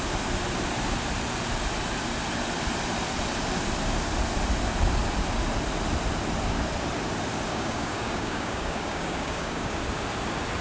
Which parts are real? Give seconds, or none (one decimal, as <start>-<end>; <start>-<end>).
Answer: 0.0-7.5; 9.8-10.6